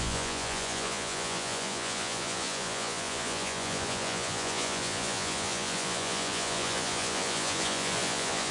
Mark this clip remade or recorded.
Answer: remade